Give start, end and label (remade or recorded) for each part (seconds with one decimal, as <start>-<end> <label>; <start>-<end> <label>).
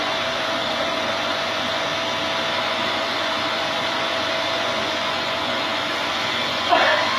0.0-1.9 remade; 1.9-2.6 recorded; 2.6-7.2 remade